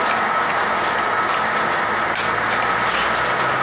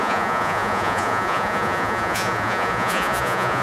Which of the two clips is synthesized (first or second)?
second